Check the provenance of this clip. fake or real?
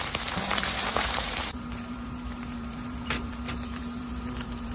fake